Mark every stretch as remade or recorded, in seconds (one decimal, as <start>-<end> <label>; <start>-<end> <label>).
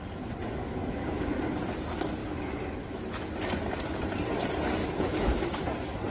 0.0-0.6 recorded; 0.6-1.4 remade; 1.4-2.2 recorded; 2.2-3.3 remade; 3.3-4.8 recorded; 4.8-5.6 remade; 5.6-6.1 recorded